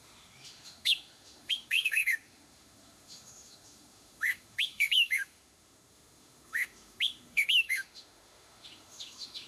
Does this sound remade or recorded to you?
remade